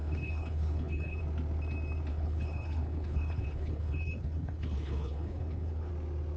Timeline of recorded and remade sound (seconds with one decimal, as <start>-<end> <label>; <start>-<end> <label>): 0.0-1.2 remade; 1.2-2.1 recorded; 2.1-5.9 remade; 5.9-6.4 recorded